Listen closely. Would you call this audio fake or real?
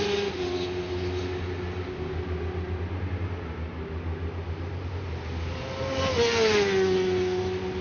real